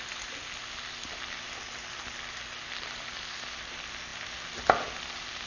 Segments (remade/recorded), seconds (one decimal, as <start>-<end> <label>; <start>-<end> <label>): 0.0-5.5 recorded